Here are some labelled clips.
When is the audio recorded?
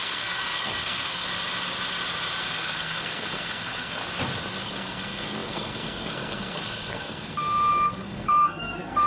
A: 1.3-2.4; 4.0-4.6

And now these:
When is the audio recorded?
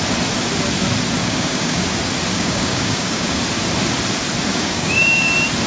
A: 0.0-1.2; 1.8-2.3; 3.4-4.5; 5.3-5.7